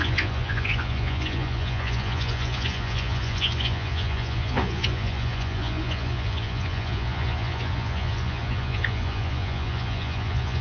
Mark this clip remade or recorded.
remade